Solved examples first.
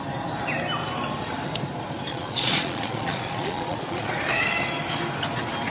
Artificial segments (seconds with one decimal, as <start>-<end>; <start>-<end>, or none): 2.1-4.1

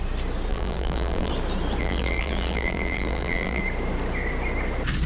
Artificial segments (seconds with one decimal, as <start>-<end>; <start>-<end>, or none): 0.5-1.3; 1.8-3.6

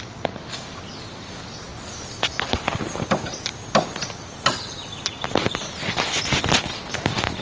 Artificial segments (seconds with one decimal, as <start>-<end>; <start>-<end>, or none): none